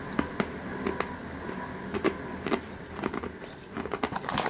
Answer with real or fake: real